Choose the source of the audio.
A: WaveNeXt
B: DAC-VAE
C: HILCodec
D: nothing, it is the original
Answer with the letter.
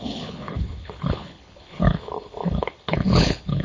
C